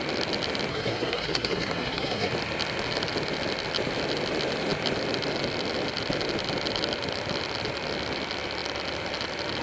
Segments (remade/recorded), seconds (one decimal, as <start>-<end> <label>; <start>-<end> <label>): 0.0-0.7 recorded; 0.7-2.3 remade; 2.3-9.6 recorded